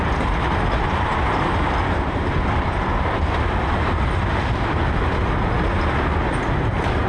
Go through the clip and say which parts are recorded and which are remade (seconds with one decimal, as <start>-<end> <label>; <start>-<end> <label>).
0.0-7.1 recorded

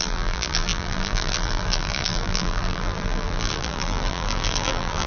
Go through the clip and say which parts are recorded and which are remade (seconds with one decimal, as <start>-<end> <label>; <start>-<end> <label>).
0.0-5.1 remade

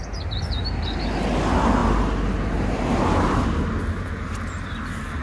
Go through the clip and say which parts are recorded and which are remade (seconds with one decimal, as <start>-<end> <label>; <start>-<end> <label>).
0.0-5.2 recorded

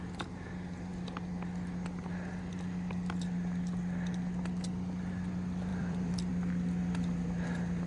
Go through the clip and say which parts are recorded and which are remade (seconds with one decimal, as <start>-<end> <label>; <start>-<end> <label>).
0.0-5.7 recorded; 5.7-6.3 remade; 6.3-7.9 recorded

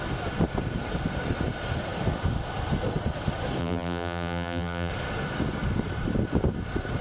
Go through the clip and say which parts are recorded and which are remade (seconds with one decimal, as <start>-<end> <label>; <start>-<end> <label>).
0.0-3.6 recorded; 3.6-4.9 remade; 4.9-7.0 recorded

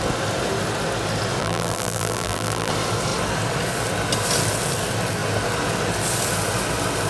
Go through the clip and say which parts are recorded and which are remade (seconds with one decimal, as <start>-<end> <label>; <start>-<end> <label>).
0.0-1.4 recorded; 1.4-2.7 remade; 2.7-7.1 recorded

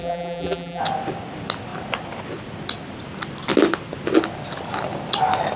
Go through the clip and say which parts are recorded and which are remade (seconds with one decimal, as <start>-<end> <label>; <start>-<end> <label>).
0.0-0.8 remade; 0.8-5.6 recorded